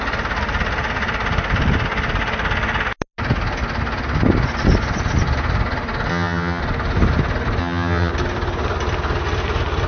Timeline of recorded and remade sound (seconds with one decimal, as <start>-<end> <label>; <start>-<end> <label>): 0.0-6.1 recorded; 6.1-6.6 remade; 6.6-7.6 recorded; 7.6-8.1 remade; 8.1-9.9 recorded